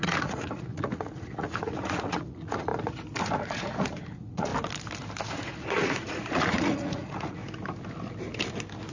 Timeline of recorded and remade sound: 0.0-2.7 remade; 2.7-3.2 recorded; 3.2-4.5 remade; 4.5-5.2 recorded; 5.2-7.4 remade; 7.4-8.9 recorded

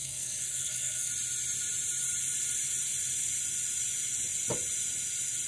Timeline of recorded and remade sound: 0.0-1.1 remade; 1.1-5.5 recorded